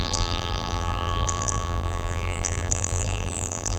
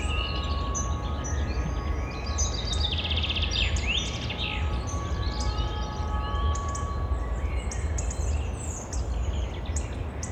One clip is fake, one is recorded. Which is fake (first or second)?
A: first